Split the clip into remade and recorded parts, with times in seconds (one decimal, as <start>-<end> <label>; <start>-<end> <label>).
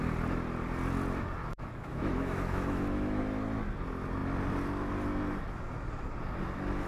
0.0-1.4 recorded; 1.4-3.2 remade; 3.2-6.9 recorded